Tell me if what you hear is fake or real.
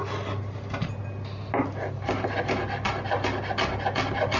real